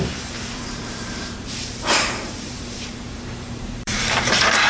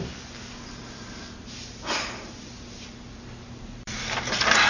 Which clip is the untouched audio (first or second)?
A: second